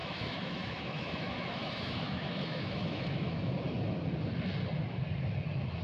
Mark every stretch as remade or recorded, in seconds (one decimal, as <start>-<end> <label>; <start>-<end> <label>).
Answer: 0.0-3.5 remade; 3.5-5.8 recorded